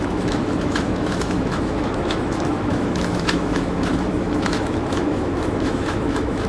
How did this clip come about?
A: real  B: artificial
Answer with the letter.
B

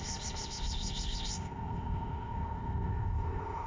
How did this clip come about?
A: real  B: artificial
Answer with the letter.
B